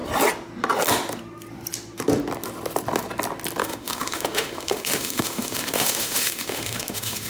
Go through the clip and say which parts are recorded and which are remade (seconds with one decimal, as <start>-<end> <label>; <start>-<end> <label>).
0.0-3.6 recorded; 3.6-7.3 remade